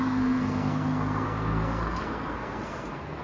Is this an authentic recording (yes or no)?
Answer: no